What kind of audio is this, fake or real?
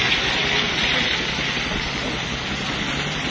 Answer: real